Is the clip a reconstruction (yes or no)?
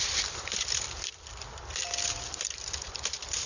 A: yes